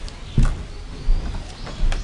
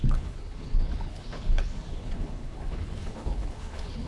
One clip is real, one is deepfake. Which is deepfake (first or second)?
second